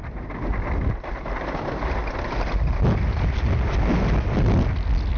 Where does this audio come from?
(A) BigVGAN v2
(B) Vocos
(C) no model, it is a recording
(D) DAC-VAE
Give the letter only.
C